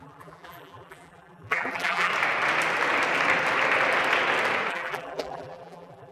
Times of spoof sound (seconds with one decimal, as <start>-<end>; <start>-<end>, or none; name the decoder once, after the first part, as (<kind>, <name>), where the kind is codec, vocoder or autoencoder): 0.0-2.1 (vocoder, BigVGAN v2); 4.7-6.1